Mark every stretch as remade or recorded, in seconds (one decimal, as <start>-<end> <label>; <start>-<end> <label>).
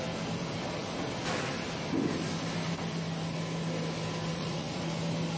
0.0-4.3 recorded; 4.3-4.9 remade; 4.9-5.4 recorded